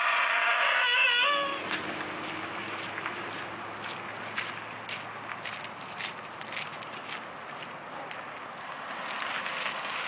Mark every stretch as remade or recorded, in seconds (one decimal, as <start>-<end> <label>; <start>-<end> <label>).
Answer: 0.0-2.6 recorded; 2.6-3.5 remade; 3.5-10.1 recorded

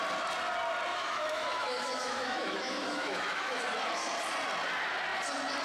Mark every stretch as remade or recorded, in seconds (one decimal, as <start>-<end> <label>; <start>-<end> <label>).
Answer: 0.0-0.9 recorded; 0.9-3.6 remade; 3.6-5.6 recorded

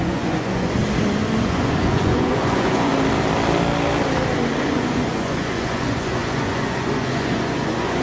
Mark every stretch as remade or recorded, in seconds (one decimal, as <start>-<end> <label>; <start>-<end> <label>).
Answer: 0.0-0.8 remade; 0.8-1.4 recorded; 1.4-2.9 remade; 2.9-4.6 recorded; 4.6-8.0 remade

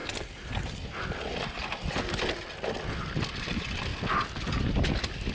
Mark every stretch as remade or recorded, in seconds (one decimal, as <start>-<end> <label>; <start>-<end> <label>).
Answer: 0.0-5.3 recorded

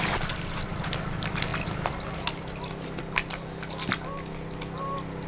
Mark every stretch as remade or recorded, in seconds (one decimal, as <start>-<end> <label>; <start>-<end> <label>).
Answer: 0.0-5.3 recorded

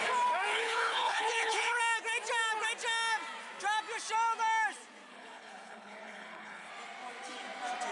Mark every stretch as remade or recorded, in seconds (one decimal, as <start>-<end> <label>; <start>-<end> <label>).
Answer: 0.0-0.5 recorded; 0.5-1.8 remade; 1.8-5.1 recorded; 5.1-6.7 remade; 6.7-7.9 recorded